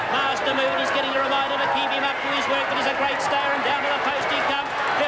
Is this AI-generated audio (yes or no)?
no